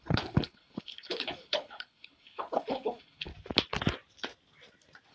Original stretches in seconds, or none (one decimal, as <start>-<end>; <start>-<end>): 3.3-5.1